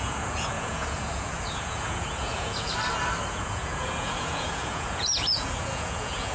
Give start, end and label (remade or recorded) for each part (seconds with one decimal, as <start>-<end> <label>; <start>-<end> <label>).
0.0-2.7 remade; 2.7-3.3 recorded; 3.3-6.3 remade